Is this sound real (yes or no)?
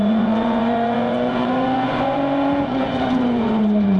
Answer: no